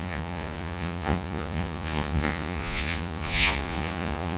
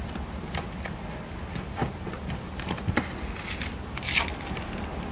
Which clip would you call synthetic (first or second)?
first